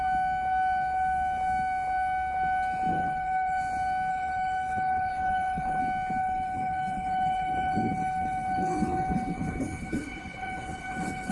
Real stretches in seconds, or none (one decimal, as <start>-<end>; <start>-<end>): 0.0-2.9; 3.6-4.1; 5.8-6.2